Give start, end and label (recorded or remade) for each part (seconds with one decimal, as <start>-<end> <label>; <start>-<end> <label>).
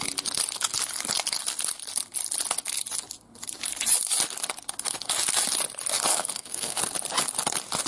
0.0-6.1 recorded; 6.1-6.8 remade; 6.8-7.9 recorded